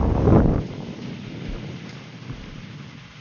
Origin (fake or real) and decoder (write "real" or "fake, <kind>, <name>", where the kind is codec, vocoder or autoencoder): real